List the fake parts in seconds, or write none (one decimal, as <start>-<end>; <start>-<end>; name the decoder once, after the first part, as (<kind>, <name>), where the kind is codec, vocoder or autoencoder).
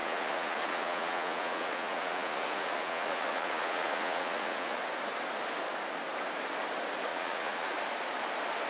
0.0-4.8 (vocoder, Vocos); 7.1-7.7